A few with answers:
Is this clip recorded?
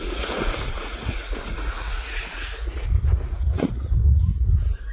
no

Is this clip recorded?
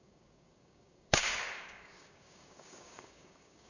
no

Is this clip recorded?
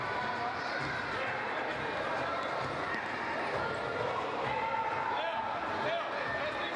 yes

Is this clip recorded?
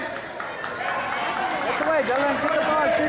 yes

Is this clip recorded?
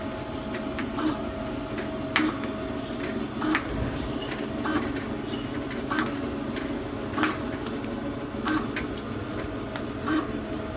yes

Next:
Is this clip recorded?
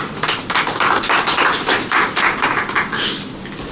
yes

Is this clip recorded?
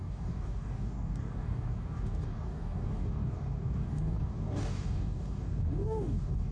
no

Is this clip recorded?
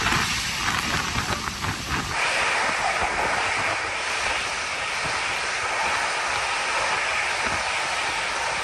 yes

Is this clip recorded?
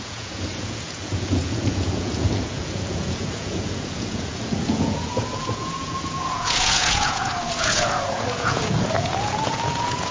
no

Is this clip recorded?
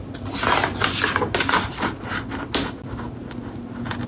yes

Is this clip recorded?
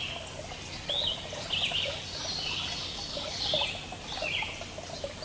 yes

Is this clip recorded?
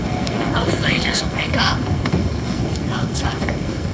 no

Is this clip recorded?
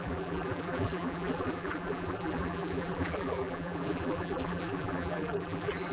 no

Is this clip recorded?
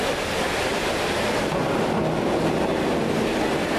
yes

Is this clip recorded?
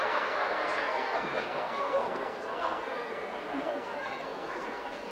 no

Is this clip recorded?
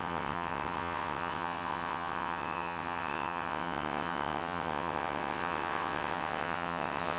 no